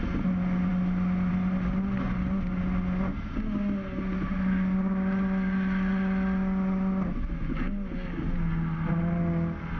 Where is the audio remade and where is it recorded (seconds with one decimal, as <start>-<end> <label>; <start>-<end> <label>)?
0.0-9.8 recorded